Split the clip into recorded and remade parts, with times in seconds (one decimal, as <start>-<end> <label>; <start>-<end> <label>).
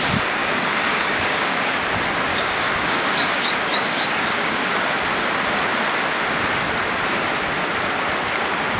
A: 0.0-0.4 recorded; 0.4-1.8 remade; 1.8-2.3 recorded; 2.3-4.7 remade; 4.7-8.8 recorded